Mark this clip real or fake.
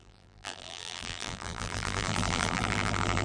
fake